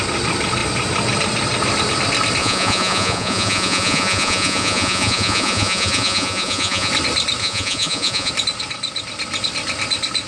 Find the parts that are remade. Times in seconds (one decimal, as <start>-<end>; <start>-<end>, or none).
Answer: 2.4-6.9; 7.4-8.3